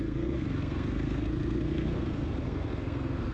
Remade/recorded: remade